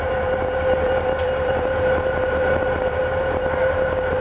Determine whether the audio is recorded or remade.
remade